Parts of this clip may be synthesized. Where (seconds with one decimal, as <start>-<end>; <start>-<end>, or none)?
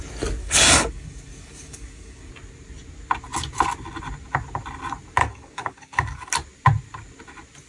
0.4-2.3; 5.2-6.3